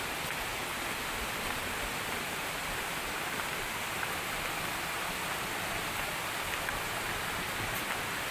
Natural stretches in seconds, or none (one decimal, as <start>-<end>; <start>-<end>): 0.0-8.3